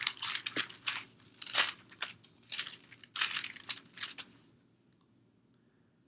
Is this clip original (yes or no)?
yes